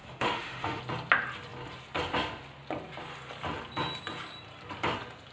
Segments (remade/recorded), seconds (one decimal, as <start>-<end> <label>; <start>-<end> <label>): 0.0-0.8 remade; 0.8-5.3 recorded